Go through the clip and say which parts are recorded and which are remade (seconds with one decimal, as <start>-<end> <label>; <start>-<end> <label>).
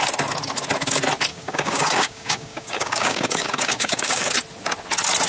0.0-1.3 recorded; 1.3-4.3 remade; 4.3-5.3 recorded